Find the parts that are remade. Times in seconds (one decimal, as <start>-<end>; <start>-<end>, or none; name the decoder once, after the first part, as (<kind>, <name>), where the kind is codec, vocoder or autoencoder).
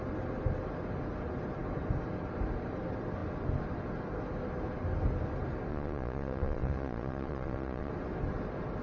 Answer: 5.7-7.9 (vocoder, Vocos)